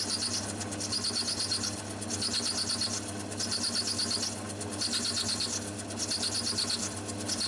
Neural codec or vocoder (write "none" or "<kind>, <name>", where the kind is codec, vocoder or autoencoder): none